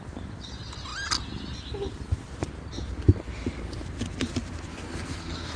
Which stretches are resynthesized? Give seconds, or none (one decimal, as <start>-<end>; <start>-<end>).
4.7-5.6